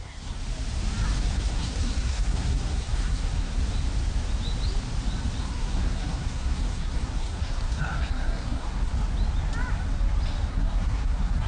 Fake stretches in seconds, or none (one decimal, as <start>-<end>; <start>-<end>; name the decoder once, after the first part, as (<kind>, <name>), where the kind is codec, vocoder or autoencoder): 0.0-0.4 (codec, SNAC); 1.2-3.6; 5.4-8.9; 10.5-11.5